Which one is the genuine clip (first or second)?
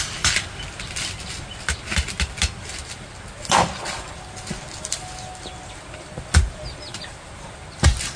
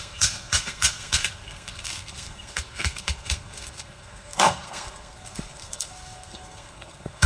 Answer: first